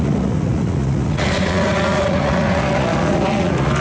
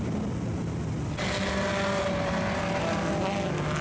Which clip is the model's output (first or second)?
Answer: first